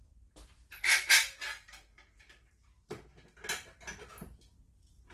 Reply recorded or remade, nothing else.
recorded